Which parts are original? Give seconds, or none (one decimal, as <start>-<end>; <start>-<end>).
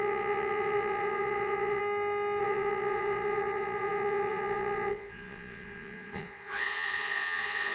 1.8-2.4